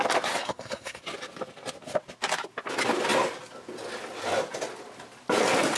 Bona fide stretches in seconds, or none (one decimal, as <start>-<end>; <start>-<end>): 0.0-0.4; 1.0-5.8